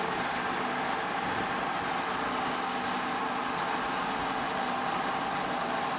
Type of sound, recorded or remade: recorded